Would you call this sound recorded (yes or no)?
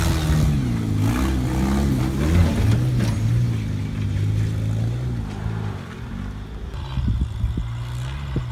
yes